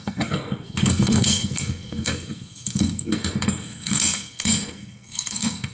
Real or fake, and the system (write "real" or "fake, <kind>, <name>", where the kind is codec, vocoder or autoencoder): fake, codec, SNAC